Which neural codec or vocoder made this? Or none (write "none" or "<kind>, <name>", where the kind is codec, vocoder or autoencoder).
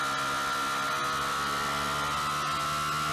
none